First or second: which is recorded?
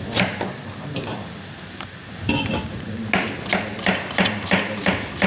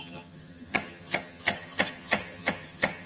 first